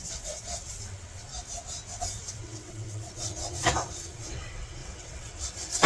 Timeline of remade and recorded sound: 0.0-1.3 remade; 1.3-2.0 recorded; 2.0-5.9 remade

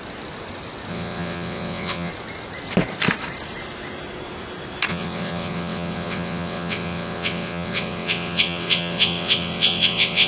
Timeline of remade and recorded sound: 0.0-0.9 recorded; 0.9-2.1 remade; 2.1-4.9 recorded; 4.9-10.3 remade

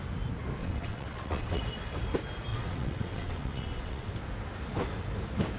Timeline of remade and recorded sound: 0.0-0.6 recorded; 0.6-1.6 remade; 1.6-2.5 recorded; 2.5-4.1 remade; 4.1-5.6 recorded

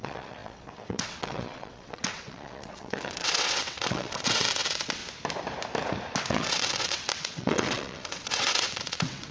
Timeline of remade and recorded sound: 0.0-5.0 remade; 5.0-6.3 recorded; 6.3-9.3 remade

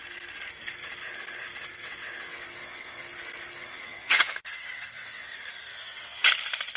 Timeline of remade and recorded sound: 0.0-1.7 recorded; 1.7-3.0 remade; 3.0-3.9 recorded; 3.9-5.3 remade; 5.3-5.7 recorded; 5.7-6.2 remade; 6.2-6.8 recorded